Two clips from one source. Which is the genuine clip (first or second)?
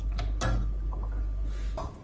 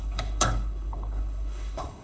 first